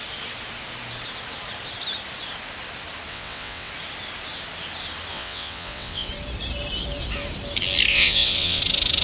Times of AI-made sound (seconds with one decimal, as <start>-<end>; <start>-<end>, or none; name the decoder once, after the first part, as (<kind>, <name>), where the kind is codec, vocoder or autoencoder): 3.1-3.7 (vocoder, WaveNeXt); 5.1-6.1; 7.9-8.6